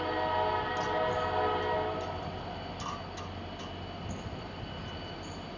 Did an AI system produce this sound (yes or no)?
no